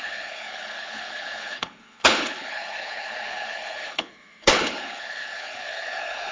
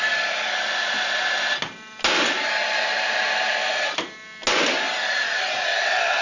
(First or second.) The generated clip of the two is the first